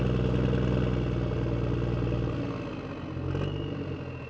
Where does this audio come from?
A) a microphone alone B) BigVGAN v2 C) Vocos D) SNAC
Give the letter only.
A